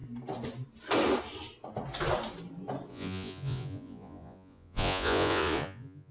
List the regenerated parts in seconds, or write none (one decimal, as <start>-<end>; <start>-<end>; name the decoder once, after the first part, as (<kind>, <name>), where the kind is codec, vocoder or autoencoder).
2.9-6.1 (vocoder, Vocos)